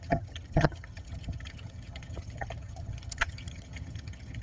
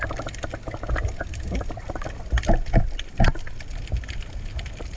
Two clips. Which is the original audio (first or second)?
second